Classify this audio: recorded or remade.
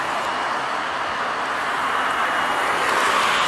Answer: recorded